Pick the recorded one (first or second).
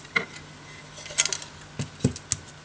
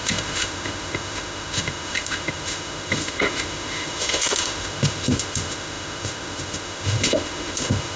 first